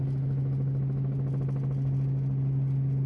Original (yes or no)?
yes